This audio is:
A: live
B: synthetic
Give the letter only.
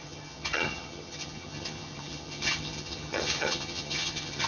B